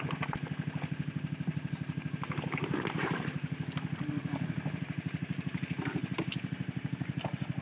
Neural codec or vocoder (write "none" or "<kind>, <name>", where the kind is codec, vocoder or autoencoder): none